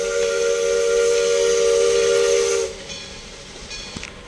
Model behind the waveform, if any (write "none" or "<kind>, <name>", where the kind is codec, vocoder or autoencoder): none